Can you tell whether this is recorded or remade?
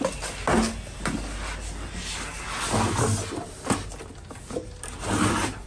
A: recorded